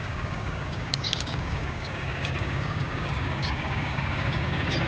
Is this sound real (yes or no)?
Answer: no